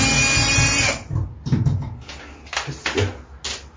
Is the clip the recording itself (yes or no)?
yes